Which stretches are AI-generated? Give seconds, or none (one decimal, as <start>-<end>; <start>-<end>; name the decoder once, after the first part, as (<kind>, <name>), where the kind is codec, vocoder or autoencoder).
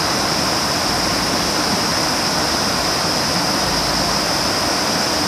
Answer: 1.9-2.5 (vocoder, BigVGAN v2)